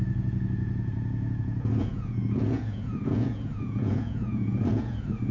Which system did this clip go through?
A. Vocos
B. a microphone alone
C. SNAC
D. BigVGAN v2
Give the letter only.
A